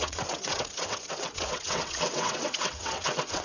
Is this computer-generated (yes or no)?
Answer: yes